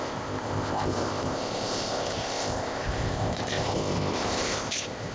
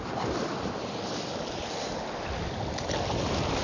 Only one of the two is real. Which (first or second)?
second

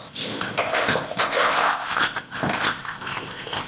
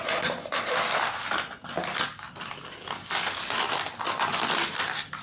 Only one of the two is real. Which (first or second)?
second